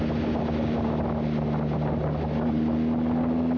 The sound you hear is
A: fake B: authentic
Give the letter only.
B